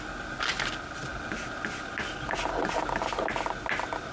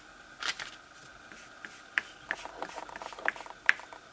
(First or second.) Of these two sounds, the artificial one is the second